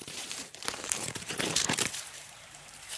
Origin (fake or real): fake